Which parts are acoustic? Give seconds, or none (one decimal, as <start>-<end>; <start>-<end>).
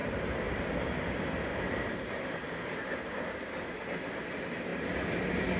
0.8-1.5; 3.7-5.6